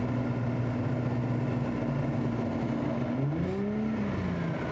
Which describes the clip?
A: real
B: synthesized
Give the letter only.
A